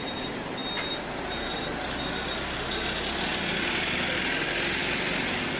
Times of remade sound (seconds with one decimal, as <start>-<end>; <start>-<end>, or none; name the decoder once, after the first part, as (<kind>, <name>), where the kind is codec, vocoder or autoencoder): none